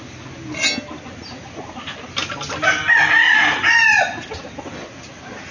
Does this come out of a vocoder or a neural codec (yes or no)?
no